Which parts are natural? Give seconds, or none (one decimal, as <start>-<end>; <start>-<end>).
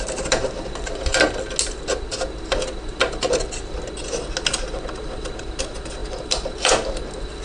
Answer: 0.0-7.4